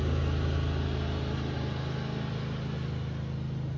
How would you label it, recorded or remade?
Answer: recorded